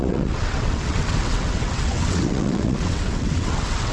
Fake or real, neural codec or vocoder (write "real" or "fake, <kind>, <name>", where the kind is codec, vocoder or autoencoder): fake, vocoder, WaveNeXt